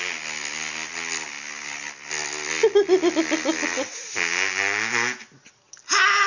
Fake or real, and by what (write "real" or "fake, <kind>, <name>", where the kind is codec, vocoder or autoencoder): real